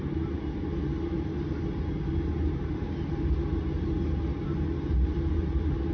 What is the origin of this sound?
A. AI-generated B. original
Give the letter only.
B